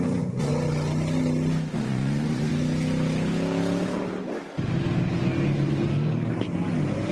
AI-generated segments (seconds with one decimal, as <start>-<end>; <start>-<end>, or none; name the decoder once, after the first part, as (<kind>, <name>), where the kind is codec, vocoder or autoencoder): 0.0-0.5 (vocoder, Vocos); 1.7-2.5